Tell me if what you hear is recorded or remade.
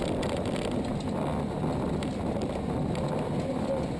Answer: recorded